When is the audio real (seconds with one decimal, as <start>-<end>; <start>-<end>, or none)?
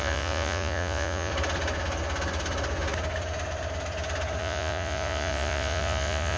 1.3-4.4